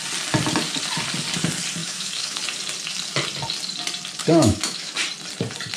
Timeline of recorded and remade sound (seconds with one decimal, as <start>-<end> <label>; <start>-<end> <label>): 0.0-1.8 recorded; 1.8-2.4 remade; 2.4-4.2 recorded; 4.2-4.9 remade; 4.9-5.8 recorded